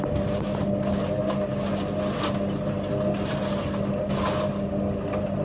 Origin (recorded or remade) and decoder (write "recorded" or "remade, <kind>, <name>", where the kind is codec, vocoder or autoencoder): recorded